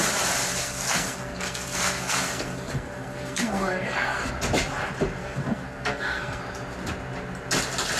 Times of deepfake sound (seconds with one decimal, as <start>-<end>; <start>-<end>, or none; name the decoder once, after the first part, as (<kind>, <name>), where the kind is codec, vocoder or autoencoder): 0.6-4.3 (codec, SNAC); 5.2-6.4